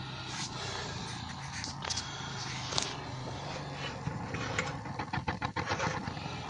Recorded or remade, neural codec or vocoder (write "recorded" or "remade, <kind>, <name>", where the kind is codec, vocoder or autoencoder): recorded